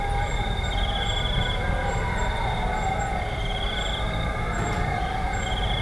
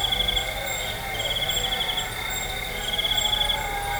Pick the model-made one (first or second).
first